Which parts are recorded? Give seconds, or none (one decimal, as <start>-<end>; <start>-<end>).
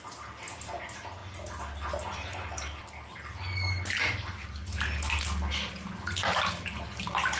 0.0-7.4